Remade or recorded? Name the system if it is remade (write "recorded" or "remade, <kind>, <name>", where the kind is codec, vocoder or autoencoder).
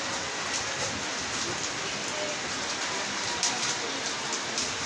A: recorded